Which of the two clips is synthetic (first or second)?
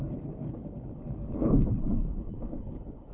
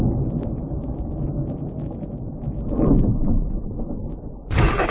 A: first